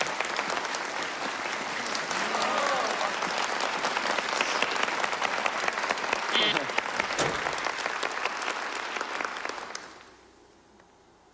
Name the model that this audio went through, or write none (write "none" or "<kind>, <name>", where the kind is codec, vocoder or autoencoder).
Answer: none